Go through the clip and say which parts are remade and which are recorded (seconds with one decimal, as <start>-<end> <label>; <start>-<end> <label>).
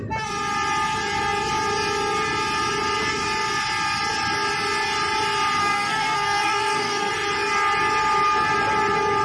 0.0-5.6 recorded; 5.6-7.1 remade; 7.1-9.2 recorded